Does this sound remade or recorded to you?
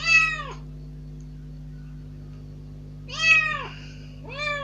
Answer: recorded